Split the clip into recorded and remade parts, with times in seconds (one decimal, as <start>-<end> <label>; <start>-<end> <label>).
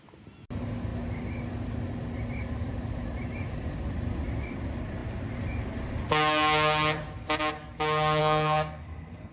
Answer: 0.0-8.2 recorded; 8.2-9.3 remade